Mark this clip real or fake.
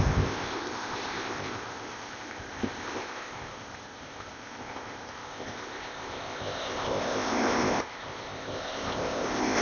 fake